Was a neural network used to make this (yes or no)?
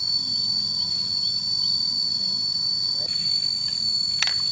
no